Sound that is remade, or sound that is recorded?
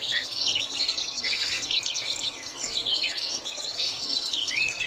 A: remade